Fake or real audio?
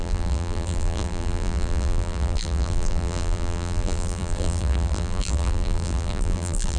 fake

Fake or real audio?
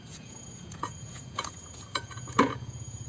fake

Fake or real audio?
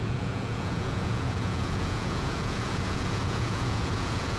fake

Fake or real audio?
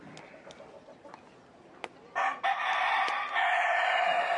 real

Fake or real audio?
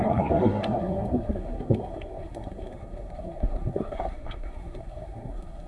fake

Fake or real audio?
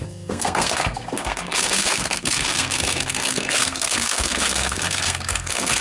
fake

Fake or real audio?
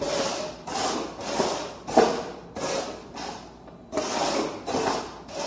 real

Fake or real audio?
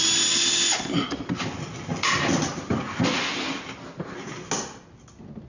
real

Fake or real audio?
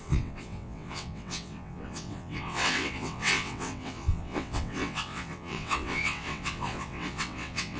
fake